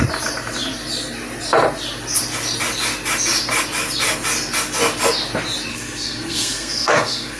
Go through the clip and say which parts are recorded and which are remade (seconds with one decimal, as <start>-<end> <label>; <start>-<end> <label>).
0.0-5.7 recorded; 5.7-7.4 remade